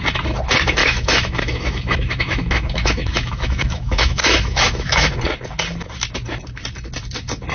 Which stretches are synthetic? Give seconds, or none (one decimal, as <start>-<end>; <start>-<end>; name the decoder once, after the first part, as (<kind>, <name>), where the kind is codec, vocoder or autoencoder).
0.8-5.1 (autoencoder, DAC-VAE)

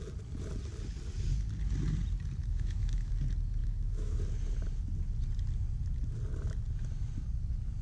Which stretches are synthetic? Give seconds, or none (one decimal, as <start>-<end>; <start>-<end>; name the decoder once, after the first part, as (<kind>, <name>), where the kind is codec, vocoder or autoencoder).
2.4-3.1 (autoencoder, DAC-VAE); 3.6-4.2

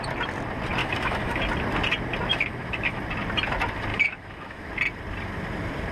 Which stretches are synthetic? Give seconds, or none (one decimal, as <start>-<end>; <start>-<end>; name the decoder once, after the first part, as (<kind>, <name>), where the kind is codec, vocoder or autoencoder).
0.8-1.4 (autoencoder, DAC-VAE); 2.3-3.0; 3.9-4.7

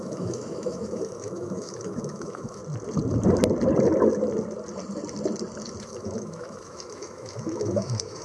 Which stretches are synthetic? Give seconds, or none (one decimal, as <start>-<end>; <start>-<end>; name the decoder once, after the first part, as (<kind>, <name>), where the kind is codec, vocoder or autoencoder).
0.0-2.6 (autoencoder, DAC-VAE); 5.8-8.2

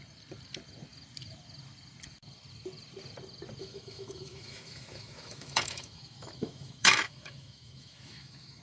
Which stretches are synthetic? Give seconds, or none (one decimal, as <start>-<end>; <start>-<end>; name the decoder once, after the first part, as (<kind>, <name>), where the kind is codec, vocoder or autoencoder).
3.6-8.6 (autoencoder, DAC-VAE)